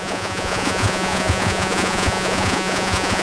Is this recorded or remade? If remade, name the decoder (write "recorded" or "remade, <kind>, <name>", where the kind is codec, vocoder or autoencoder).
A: remade, vocoder, Vocos